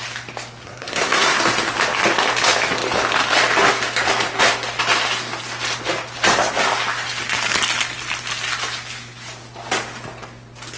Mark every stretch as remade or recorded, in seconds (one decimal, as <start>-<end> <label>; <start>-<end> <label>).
0.0-0.6 recorded; 0.6-1.4 remade; 1.4-10.8 recorded